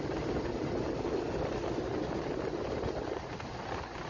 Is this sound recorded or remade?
recorded